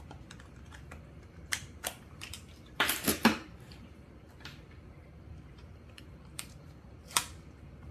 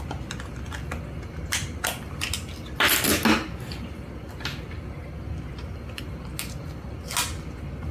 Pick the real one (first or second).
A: second